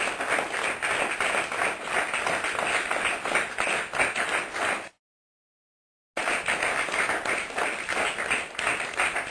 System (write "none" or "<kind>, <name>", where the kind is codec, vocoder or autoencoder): none